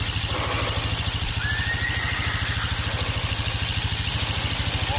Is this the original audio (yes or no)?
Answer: yes